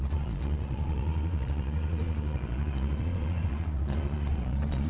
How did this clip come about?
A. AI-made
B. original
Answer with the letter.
A